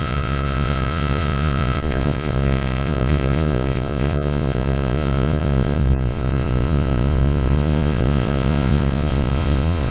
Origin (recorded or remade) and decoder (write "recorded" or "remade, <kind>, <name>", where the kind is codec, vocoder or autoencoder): remade, vocoder, Vocos